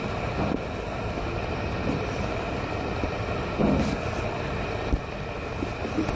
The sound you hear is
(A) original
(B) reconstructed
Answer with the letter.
A